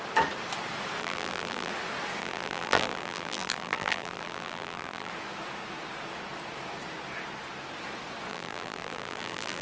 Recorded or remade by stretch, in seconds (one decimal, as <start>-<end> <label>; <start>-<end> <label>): 0.0-1.0 recorded; 1.0-1.7 remade; 1.7-2.2 recorded; 2.2-5.1 remade; 5.1-8.3 recorded; 8.3-9.6 remade